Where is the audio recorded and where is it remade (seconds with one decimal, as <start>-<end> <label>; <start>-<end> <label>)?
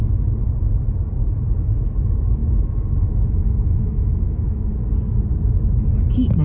0.0-2.4 recorded; 2.4-4.7 remade; 4.7-6.4 recorded